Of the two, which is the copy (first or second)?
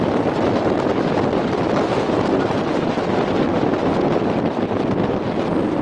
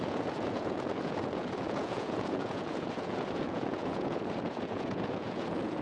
second